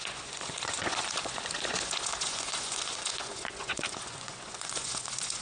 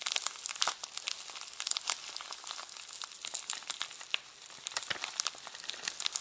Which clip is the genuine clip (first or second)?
second